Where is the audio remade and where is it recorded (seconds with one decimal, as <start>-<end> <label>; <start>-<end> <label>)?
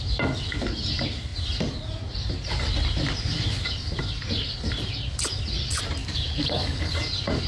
0.0-6.0 recorded; 6.0-6.9 remade; 6.9-7.5 recorded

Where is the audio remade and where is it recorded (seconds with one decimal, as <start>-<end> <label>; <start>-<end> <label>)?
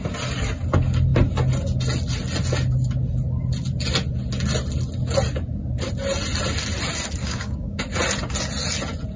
0.0-7.2 recorded; 7.2-7.8 remade; 7.8-9.2 recorded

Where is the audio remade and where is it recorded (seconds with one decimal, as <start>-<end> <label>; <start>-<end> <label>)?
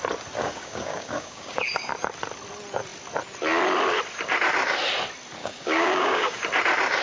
0.0-0.4 recorded; 0.4-1.9 remade; 1.9-5.4 recorded; 5.4-6.4 remade; 6.4-7.0 recorded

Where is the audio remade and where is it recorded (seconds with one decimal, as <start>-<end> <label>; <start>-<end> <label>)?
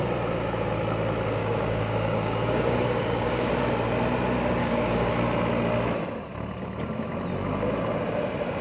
0.0-1.4 recorded; 1.4-3.5 remade; 3.5-4.6 recorded; 4.6-5.1 remade; 5.1-8.6 recorded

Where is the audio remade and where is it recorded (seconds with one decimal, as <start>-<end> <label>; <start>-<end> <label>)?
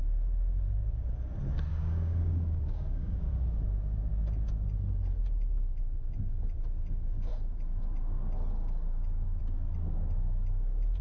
0.0-1.7 recorded; 1.7-3.3 remade; 3.3-11.0 recorded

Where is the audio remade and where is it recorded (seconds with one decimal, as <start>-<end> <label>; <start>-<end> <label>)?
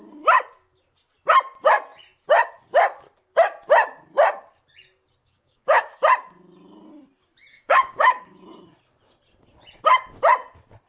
0.0-5.2 recorded; 5.2-6.0 remade; 6.0-7.5 recorded; 7.5-8.4 remade; 8.4-10.9 recorded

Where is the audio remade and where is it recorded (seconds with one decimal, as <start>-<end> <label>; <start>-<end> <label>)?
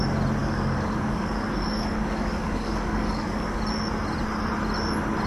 0.0-0.4 recorded; 0.4-3.6 remade; 3.6-5.3 recorded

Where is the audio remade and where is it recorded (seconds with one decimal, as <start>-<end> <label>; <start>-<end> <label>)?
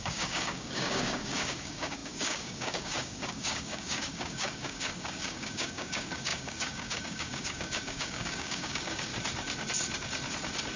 0.0-9.1 remade; 9.1-10.8 recorded